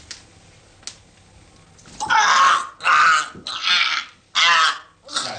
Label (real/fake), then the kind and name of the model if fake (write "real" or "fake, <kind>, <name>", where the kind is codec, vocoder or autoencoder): real